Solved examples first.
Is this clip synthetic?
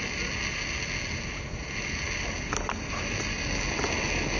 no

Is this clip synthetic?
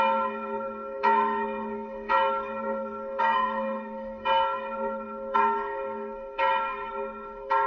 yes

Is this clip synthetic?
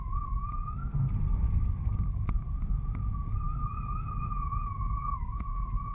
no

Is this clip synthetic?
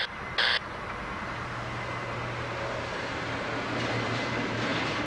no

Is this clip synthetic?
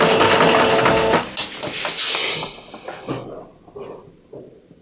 no